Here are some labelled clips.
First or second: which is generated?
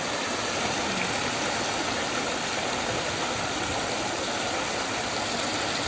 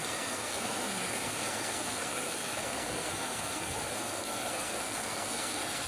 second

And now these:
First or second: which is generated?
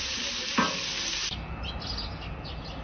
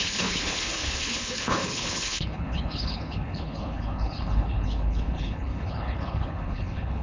second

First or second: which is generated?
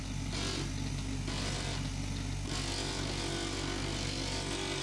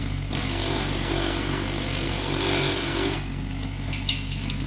second